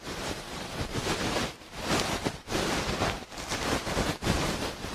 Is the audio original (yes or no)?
no